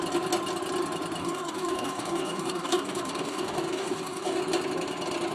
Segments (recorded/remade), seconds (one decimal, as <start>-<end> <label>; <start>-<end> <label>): 0.0-1.2 recorded; 1.2-4.4 remade; 4.4-5.3 recorded